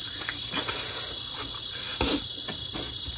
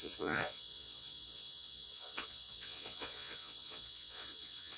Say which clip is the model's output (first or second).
second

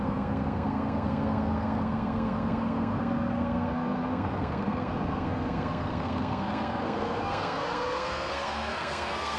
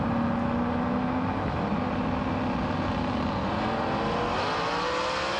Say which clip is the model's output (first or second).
first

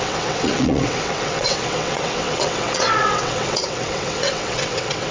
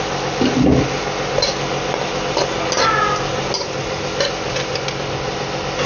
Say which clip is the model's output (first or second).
first